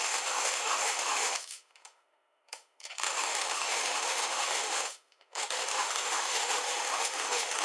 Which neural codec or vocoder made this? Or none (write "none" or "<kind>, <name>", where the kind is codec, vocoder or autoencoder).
autoencoder, DAC-VAE